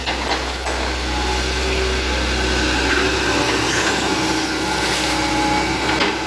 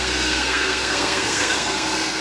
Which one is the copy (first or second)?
second